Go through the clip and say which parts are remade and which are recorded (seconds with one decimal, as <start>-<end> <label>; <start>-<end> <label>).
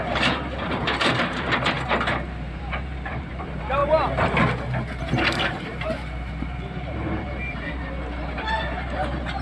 0.0-3.8 remade; 3.8-5.0 recorded; 5.0-9.4 remade